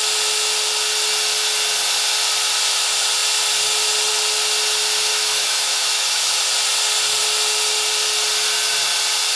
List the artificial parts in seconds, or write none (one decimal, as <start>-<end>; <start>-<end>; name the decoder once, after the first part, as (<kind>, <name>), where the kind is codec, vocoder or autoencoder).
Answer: 5.1-6.4 (autoencoder, DAC-VAE)